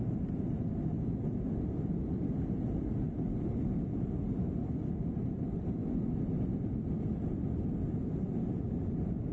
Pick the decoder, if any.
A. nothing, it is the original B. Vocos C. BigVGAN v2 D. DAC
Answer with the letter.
A